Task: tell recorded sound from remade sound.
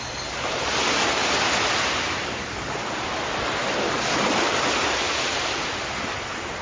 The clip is recorded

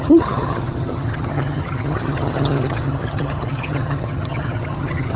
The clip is remade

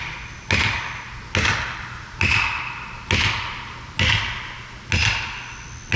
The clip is recorded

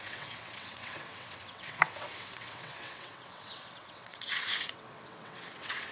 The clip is remade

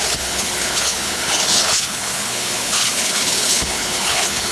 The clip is remade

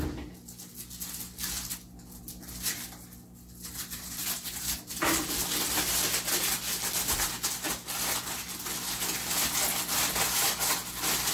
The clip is recorded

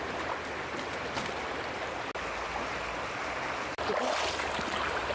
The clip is recorded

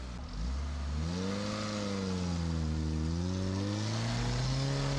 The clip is recorded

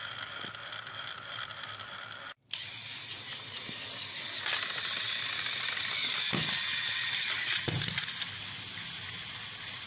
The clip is recorded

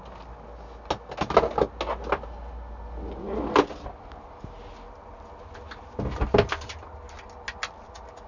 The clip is recorded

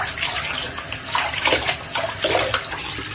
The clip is recorded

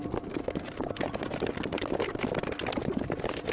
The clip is recorded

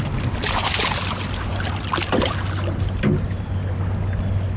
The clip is recorded